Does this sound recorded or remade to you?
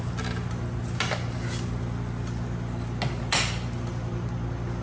recorded